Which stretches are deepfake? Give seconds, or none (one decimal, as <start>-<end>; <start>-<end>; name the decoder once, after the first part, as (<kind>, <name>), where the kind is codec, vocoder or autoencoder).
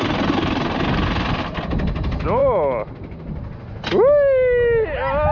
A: none